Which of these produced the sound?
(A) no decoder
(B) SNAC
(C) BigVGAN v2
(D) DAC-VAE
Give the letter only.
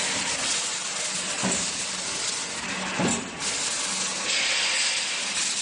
A